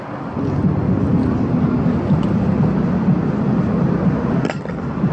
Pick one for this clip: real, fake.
real